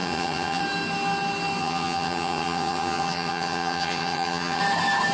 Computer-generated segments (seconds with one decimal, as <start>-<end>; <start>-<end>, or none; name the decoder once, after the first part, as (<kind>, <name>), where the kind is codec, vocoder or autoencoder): 0.0-0.6 (vocoder, HiFi-GAN); 1.6-4.6